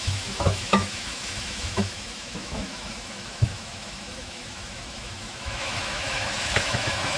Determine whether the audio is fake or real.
fake